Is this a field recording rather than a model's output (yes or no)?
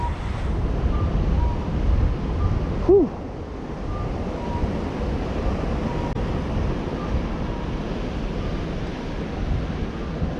yes